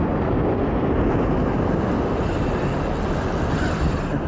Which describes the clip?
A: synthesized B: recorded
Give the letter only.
B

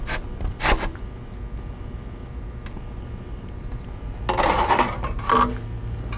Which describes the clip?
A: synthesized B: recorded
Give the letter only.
B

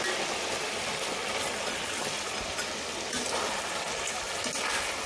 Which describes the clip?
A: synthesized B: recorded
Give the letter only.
B